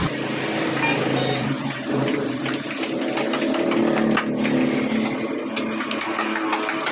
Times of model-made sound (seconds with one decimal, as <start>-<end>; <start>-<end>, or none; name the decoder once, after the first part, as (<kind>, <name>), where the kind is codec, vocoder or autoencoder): none

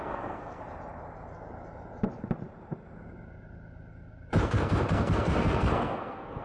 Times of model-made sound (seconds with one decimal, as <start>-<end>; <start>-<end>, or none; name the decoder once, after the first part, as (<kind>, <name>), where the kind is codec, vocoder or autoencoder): 0.0-0.6 (codec, SNAC); 4.4-6.4

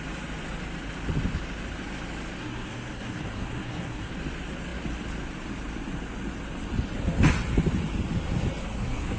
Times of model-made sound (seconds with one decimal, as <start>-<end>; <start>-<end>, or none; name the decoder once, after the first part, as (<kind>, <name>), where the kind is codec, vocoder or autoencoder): 2.4-4.1 (codec, SNAC); 8.6-9.2

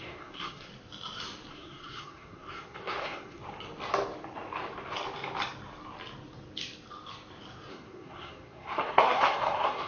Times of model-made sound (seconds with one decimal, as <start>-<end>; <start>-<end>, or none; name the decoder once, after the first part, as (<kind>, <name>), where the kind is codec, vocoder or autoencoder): 0.0-0.7 (codec, SNAC); 1.5-3.4; 7.7-9.9